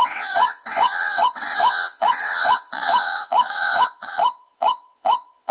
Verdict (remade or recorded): remade